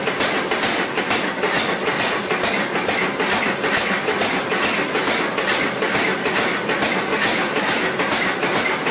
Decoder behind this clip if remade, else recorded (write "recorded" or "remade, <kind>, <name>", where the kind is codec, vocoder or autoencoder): recorded